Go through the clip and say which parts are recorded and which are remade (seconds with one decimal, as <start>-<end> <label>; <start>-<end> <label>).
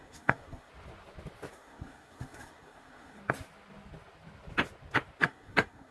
0.0-0.7 remade; 0.7-1.5 recorded; 1.5-3.2 remade; 3.2-5.2 recorded; 5.2-5.9 remade